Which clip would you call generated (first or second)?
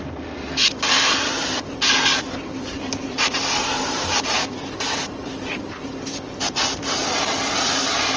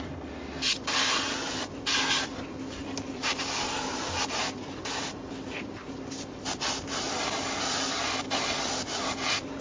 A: first